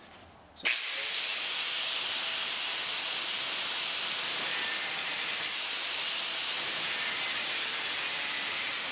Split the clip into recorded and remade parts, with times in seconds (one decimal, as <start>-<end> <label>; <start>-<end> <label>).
0.0-8.9 recorded